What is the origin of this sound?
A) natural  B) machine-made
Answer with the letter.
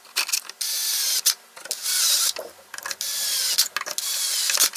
A